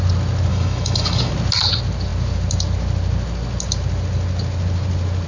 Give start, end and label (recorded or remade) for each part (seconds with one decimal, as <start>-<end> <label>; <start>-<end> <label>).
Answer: 0.0-0.5 recorded; 0.5-1.3 remade; 1.3-5.3 recorded